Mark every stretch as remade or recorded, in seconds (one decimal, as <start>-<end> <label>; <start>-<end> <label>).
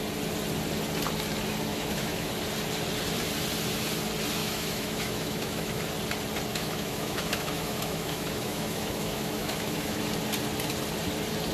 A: 0.0-1.7 recorded; 1.7-2.3 remade; 2.3-4.4 recorded; 4.4-5.8 remade; 5.8-6.5 recorded; 6.5-10.0 remade; 10.0-11.5 recorded